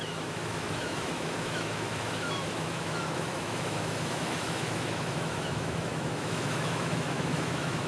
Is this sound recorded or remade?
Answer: remade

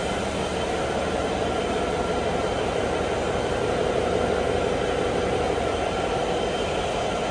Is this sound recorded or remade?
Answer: recorded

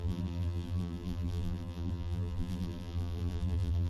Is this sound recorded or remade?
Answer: remade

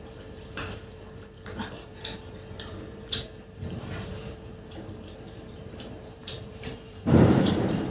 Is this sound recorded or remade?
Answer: remade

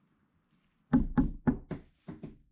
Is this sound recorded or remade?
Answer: recorded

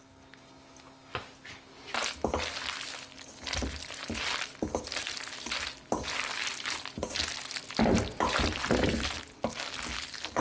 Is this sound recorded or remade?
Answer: recorded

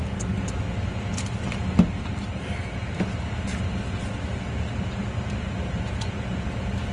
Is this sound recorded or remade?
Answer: recorded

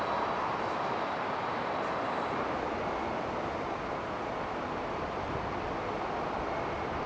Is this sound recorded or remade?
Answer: recorded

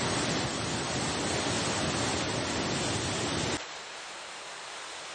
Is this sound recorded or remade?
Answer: recorded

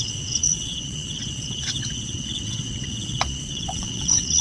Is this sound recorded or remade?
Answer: remade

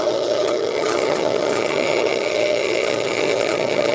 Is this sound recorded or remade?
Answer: remade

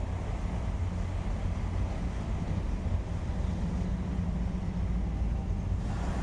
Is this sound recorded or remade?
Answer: recorded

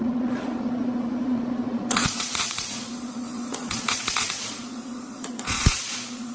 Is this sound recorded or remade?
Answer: remade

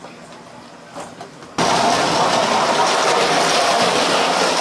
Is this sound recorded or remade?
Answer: recorded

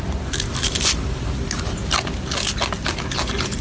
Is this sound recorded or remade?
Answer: recorded